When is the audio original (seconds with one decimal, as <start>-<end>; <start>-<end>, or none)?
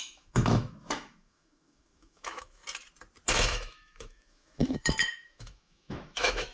2.6-3.3